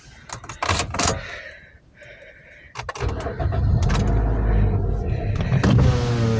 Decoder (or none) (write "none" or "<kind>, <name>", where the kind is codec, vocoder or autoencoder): none